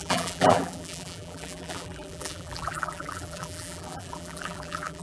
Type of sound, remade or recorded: remade